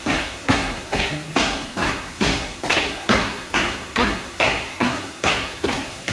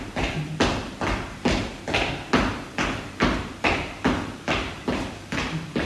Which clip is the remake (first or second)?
first